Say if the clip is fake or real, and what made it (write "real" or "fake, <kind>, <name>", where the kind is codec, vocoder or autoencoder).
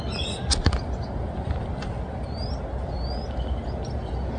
real